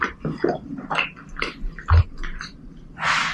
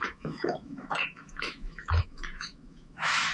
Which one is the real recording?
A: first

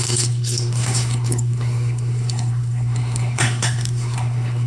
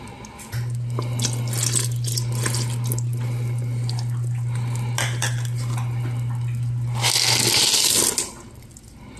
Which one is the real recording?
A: second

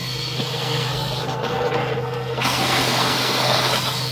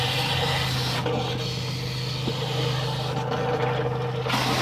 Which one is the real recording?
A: second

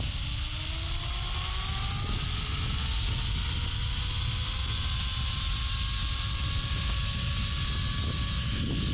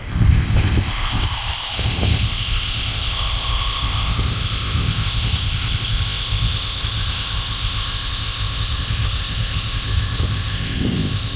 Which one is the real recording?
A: first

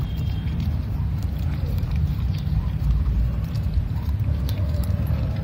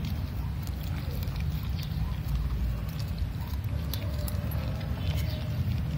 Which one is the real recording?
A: second